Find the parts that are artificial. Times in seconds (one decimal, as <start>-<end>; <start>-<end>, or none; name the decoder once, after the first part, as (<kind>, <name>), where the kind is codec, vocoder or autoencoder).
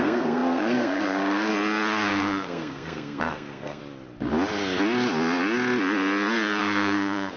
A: 0.0-1.5 (codec, SNAC); 2.1-3.8; 6.6-7.4